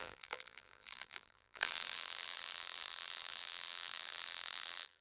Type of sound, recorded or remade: remade